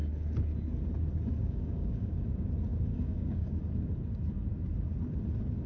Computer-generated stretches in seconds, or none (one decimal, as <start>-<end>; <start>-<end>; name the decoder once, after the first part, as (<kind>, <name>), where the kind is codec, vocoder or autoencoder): 1.4-2.2 (codec, DAC); 2.7-3.6